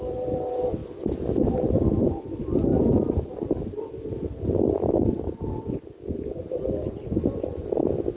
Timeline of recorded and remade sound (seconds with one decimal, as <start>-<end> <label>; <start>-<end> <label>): 0.0-8.2 remade